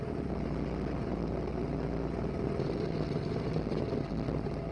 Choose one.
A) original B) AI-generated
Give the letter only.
A